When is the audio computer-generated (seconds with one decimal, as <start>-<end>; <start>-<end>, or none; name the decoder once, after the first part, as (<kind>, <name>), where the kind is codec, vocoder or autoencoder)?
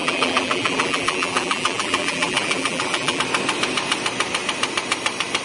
0.0-3.2 (vocoder, BigVGAN v2)